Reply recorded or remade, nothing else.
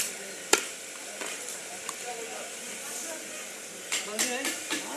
remade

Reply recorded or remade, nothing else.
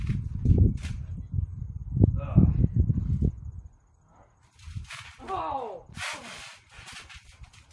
recorded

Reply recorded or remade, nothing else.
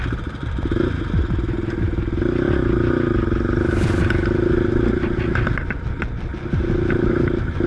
recorded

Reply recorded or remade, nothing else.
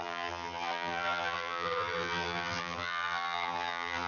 remade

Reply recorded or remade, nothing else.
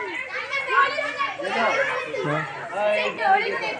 recorded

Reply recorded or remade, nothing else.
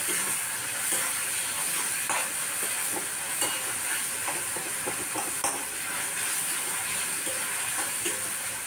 recorded